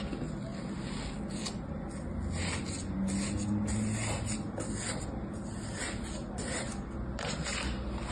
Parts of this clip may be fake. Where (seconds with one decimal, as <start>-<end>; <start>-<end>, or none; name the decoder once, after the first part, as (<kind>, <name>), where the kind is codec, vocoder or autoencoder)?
none